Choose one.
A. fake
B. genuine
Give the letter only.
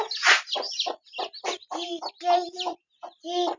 B